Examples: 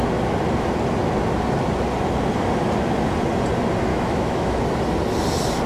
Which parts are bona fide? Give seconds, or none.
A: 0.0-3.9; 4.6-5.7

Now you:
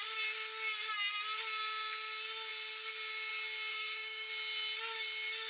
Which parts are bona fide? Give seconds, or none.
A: 0.0-3.7; 4.3-5.5